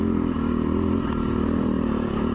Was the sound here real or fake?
fake